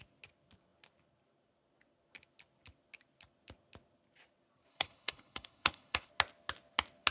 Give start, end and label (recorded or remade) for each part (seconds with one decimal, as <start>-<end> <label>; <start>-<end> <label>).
0.0-4.7 recorded; 4.7-6.1 remade; 6.1-7.1 recorded